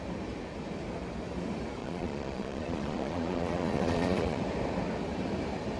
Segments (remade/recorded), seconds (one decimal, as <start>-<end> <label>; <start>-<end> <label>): 0.0-1.8 recorded; 1.8-4.4 remade; 4.4-5.8 recorded